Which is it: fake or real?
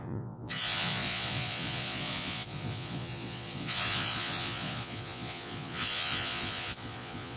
fake